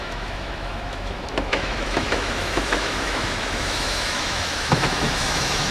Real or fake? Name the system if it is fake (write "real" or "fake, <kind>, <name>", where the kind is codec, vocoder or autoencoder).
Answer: fake, autoencoder, DAC-VAE